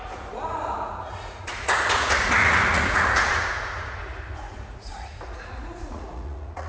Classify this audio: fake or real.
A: fake